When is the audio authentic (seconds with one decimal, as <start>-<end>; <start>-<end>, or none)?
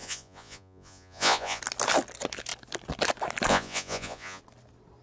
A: 1.6-3.5; 4.4-5.0